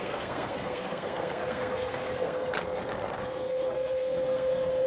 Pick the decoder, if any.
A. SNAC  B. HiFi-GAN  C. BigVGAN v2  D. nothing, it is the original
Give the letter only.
A